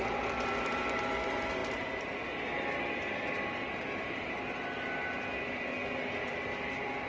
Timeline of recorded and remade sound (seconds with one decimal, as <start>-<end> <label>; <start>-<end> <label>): 0.0-7.1 recorded